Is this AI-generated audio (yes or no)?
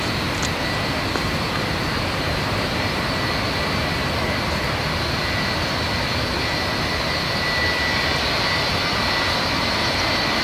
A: no